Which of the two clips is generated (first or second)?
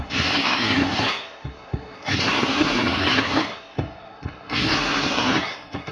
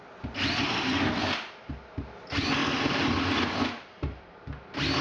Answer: first